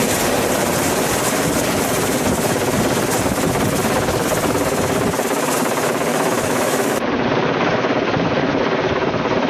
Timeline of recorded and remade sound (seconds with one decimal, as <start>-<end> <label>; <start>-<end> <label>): 0.0-6.1 recorded; 6.1-7.0 remade; 7.0-9.5 recorded